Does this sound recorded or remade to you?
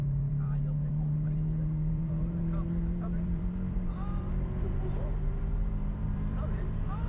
remade